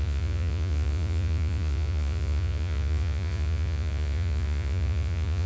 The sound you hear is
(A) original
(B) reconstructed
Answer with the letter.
B